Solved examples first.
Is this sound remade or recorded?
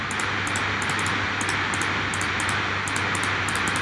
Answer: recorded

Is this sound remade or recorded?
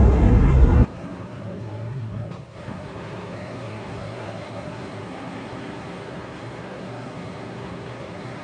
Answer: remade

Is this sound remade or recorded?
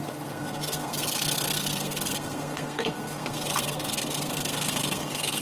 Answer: remade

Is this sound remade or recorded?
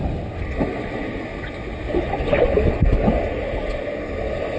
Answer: recorded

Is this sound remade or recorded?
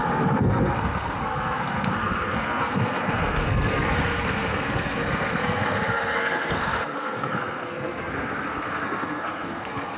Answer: remade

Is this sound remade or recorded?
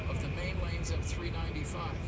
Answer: recorded